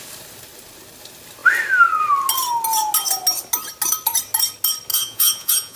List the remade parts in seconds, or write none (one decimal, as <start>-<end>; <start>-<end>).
4.9-5.8